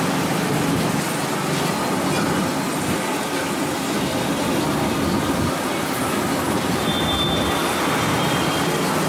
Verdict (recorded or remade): recorded